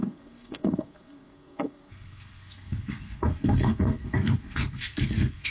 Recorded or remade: remade